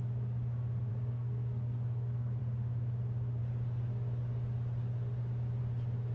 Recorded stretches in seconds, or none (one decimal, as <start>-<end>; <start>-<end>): 0.0-0.9; 2.4-6.1